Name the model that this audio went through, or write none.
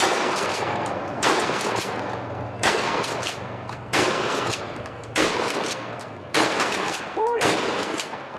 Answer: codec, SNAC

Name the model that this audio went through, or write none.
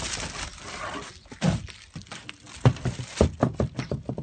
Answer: none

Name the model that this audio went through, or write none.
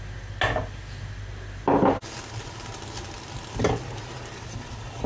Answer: none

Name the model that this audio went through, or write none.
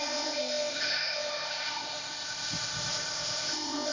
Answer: codec, ZipCodec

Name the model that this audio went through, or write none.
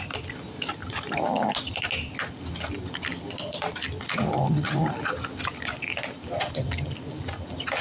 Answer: none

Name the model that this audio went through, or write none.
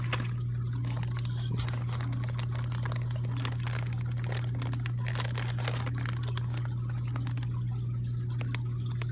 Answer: none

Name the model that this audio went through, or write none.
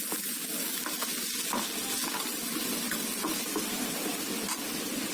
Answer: none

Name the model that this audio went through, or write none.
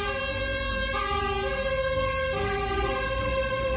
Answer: none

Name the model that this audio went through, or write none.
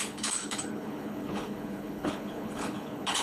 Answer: codec, HILCodec